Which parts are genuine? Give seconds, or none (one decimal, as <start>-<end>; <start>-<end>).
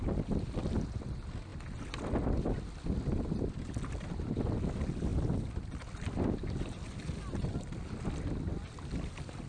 0.0-9.5